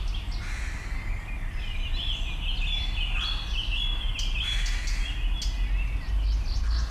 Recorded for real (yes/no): yes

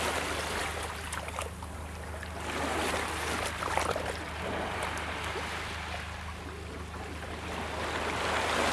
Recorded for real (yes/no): yes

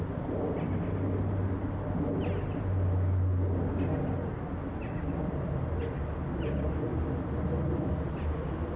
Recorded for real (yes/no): yes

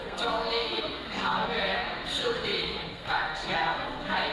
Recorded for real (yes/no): no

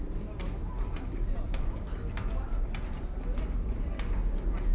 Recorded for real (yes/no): yes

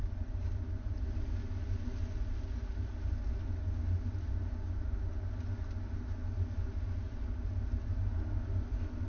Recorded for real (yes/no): yes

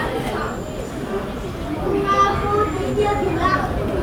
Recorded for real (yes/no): yes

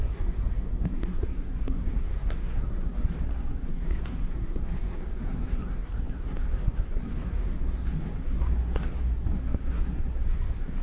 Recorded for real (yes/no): no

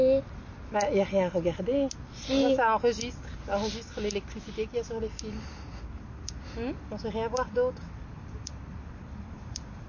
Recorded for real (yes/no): yes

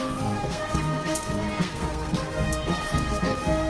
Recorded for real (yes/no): no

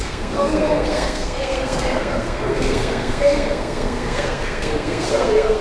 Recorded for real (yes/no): no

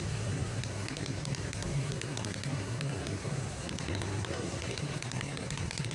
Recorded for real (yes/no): no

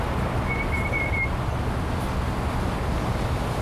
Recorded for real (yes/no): yes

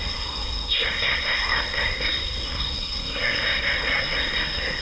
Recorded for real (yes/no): no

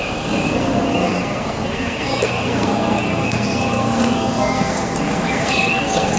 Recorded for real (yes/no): no